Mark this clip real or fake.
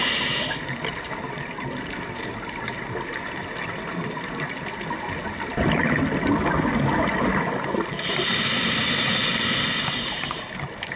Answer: real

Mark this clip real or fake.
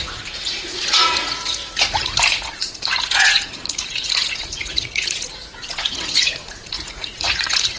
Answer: fake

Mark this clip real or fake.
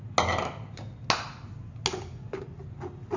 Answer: real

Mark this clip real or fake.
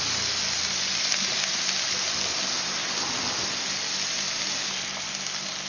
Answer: real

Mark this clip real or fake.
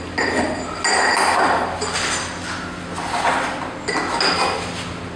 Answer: real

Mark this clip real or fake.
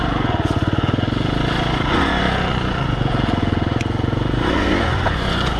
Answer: fake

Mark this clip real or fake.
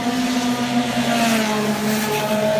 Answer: real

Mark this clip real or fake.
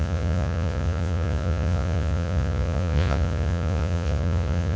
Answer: fake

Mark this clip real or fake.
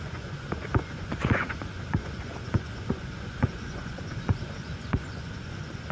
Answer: fake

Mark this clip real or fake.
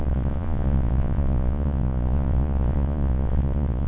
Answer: fake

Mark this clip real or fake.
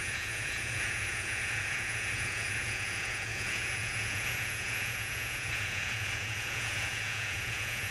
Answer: fake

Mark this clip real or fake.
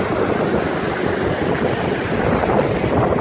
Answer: real